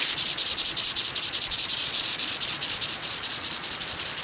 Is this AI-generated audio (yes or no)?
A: yes